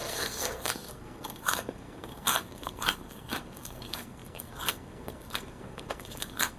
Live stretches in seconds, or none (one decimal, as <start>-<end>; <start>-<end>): none